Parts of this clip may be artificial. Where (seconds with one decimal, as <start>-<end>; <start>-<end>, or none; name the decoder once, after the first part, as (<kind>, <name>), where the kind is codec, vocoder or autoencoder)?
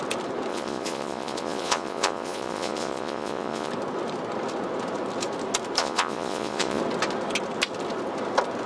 0.5-3.7 (vocoder, Vocos); 5.8-6.8